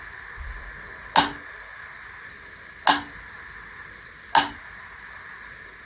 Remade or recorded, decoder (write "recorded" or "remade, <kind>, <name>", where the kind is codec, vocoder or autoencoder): recorded